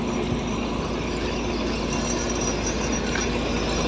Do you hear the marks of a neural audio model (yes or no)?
no